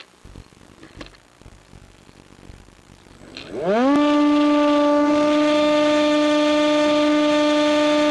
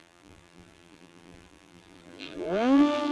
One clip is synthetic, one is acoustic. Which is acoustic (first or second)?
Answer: first